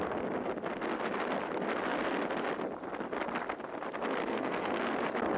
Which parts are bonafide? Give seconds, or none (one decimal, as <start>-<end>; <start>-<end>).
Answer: 0.0-4.3; 4.9-5.4

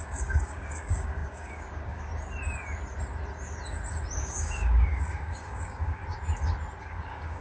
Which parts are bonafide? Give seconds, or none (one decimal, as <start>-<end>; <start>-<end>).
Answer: 2.1-4.2; 6.0-6.8

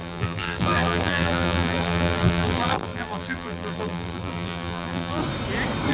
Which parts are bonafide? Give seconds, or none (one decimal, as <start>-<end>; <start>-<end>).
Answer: 5.2-5.9

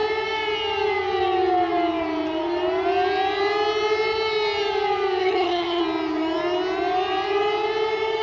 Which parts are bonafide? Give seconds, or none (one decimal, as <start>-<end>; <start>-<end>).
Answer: 0.0-5.2; 5.8-8.2

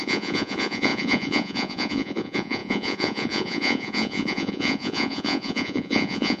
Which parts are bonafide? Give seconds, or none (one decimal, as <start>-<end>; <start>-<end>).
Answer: none